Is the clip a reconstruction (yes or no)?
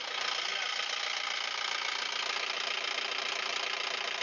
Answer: no